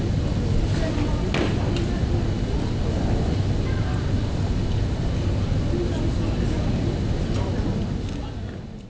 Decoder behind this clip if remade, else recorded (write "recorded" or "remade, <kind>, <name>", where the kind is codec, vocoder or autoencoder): recorded